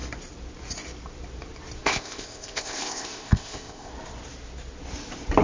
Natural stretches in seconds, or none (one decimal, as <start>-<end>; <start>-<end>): 0.0-1.8; 3.9-5.4